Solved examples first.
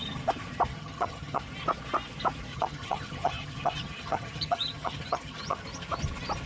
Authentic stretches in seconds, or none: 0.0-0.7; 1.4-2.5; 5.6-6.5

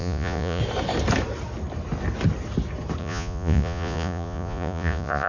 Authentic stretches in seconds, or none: 0.6-3.0

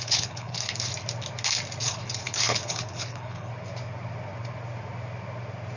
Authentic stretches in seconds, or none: 0.9-1.8; 3.5-5.8

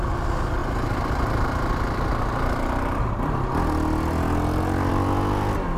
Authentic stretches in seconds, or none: 0.0-5.8

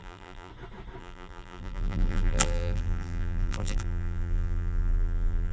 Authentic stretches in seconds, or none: 0.5-1.0

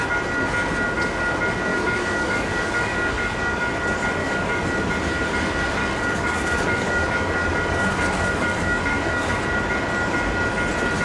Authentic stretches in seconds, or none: 0.0-1.7; 3.7-4.2; 4.7-5.8; 9.4-11.0

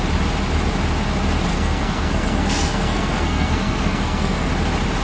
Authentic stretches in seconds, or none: 0.0-1.5; 4.5-5.0

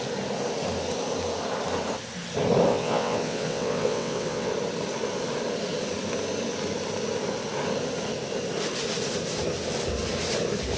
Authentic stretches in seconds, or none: 0.0-2.7; 4.5-10.8